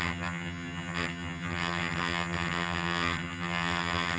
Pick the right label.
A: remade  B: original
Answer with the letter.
A